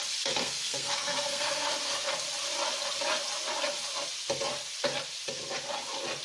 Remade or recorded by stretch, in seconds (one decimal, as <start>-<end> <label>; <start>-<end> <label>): 0.0-0.4 recorded; 0.4-2.1 remade; 2.1-6.2 recorded